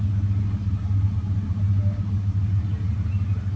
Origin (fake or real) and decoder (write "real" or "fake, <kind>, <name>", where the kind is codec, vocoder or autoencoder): real